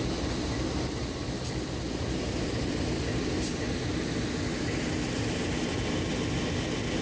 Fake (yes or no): no